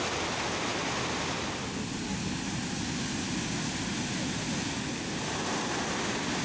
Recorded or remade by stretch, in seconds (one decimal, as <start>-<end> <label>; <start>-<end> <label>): 0.0-6.4 recorded